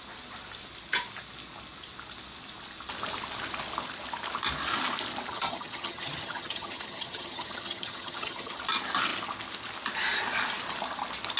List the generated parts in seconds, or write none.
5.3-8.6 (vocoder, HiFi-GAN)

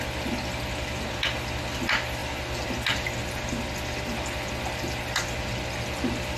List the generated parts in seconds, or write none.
none

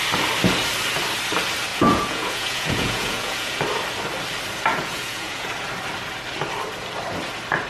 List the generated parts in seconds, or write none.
1.7-3.6 (vocoder, Vocos); 4.7-5.5

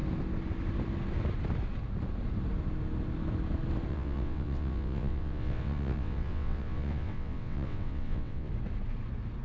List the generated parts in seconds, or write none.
3.9-8.5 (vocoder, WaveNeXt)

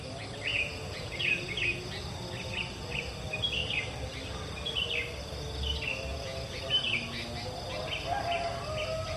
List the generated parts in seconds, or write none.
0.5-1.8 (vocoder, Vocos); 6.1-6.6